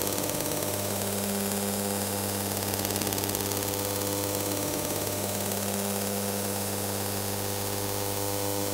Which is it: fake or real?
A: fake